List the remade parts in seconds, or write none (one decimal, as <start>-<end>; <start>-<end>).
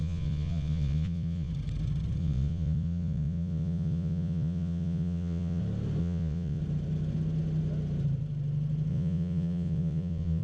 0.0-1.5; 2.2-5.6; 6.0-6.6; 8.9-10.4